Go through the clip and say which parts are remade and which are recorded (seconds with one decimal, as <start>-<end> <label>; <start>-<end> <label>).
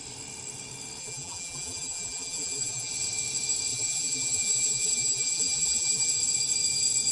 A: 0.0-1.0 recorded; 1.0-2.9 remade; 2.9-3.7 recorded; 3.7-6.2 remade; 6.2-7.1 recorded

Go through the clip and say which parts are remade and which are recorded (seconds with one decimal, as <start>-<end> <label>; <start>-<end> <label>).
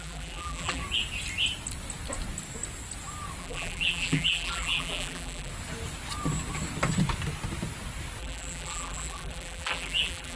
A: 0.0-0.8 remade; 0.8-3.4 recorded; 3.4-5.5 remade; 5.5-8.2 recorded; 8.2-10.4 remade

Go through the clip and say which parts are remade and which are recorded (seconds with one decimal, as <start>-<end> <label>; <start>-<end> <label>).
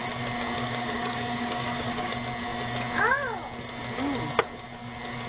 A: 0.0-0.6 recorded; 0.6-2.1 remade; 2.1-5.3 recorded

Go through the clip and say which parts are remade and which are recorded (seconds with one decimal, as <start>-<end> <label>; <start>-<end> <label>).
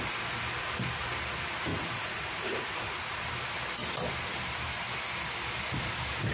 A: 0.0-1.7 recorded; 1.7-3.2 remade; 3.2-6.3 recorded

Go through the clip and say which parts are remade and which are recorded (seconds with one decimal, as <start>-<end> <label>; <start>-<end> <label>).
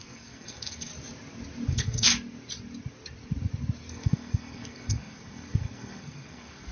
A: 0.0-0.9 remade; 0.9-1.7 recorded; 1.7-2.1 remade; 2.1-3.9 recorded; 3.9-6.7 remade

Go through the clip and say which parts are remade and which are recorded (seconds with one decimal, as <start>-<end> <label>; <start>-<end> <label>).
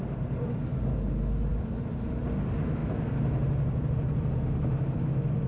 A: 0.0-5.5 recorded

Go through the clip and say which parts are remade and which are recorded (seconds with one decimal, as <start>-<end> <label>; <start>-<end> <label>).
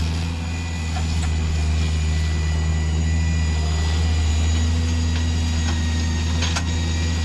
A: 0.0-7.2 recorded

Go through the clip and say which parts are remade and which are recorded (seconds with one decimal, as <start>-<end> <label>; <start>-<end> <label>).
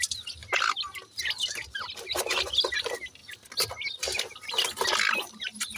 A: 0.0-5.8 recorded